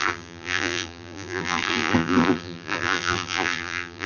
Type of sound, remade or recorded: remade